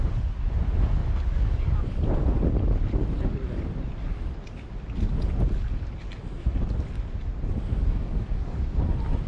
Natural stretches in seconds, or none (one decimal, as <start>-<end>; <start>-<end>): 0.0-1.0; 1.9-7.8; 8.8-9.3

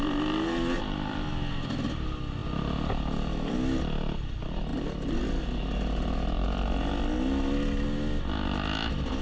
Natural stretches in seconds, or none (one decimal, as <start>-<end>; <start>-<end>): 0.0-9.2

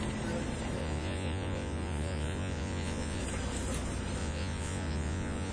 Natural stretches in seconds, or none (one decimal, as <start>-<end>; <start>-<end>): 0.0-0.8; 3.2-4.2

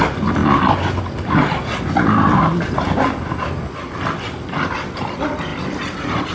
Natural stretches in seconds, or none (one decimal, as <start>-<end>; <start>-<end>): 0.0-6.3